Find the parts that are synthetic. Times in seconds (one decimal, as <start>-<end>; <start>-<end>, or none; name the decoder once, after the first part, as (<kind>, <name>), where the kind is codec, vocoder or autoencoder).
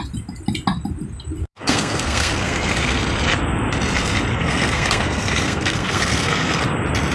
1.4-3.0 (codec, SNAC); 4.3-6.6